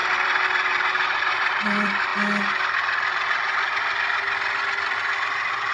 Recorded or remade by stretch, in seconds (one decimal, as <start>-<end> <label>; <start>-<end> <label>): 0.0-2.1 remade; 2.1-5.7 recorded